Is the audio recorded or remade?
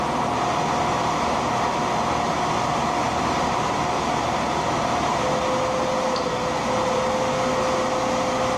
recorded